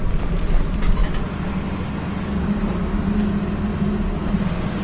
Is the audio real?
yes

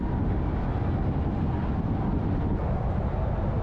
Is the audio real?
yes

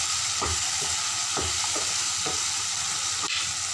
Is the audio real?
no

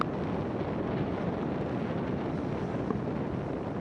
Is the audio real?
yes